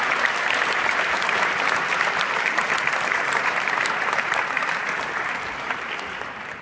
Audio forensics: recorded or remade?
remade